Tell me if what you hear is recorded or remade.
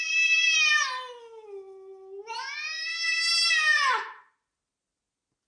recorded